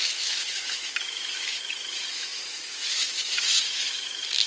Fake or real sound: fake